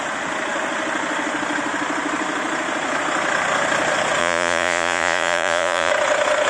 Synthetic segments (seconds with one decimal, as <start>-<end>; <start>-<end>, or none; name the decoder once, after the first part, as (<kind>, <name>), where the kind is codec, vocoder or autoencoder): 4.2-5.9 (vocoder, Vocos)